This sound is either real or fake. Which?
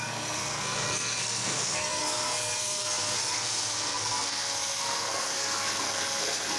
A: fake